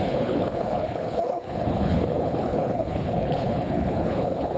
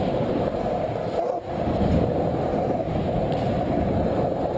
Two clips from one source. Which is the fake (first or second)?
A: first